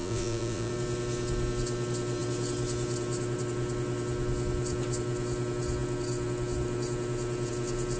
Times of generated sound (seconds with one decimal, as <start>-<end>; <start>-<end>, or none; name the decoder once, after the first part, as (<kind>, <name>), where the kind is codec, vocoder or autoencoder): 0.0-0.7 (vocoder, Vocos)

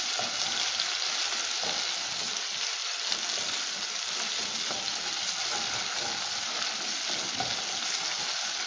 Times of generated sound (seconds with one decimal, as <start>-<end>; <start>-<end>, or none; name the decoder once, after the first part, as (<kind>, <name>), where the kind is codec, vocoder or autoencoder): none

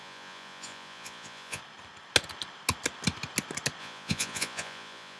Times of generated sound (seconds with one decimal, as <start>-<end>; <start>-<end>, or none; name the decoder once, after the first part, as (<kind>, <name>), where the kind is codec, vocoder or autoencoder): 0.0-1.6 (vocoder, Vocos); 3.8-5.2

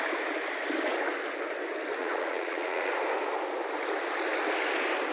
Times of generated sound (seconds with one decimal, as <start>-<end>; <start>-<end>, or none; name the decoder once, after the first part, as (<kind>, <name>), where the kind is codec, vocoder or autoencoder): 2.0-2.9 (vocoder, Vocos)

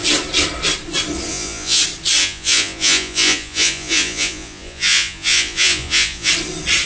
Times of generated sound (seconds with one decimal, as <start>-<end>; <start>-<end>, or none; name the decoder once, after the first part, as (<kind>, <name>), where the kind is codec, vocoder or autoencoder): 1.3-1.8 (vocoder, Vocos); 2.2-6.3